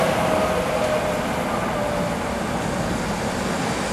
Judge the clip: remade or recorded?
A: recorded